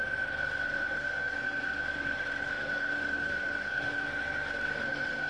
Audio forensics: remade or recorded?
remade